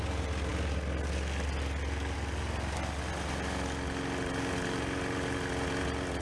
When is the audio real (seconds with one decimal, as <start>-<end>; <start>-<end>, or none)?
0.0-6.2